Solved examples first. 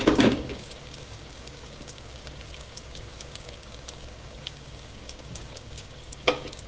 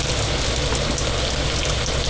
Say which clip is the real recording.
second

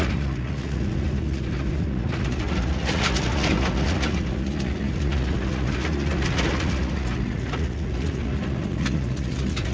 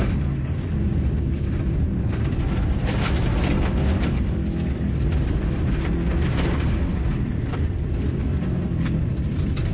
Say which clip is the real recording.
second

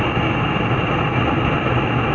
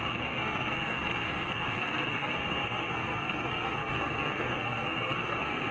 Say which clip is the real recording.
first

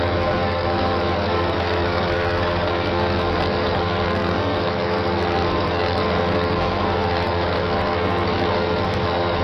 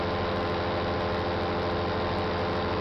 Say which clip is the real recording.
second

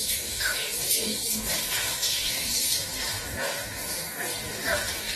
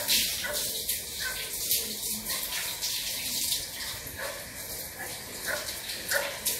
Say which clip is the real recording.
second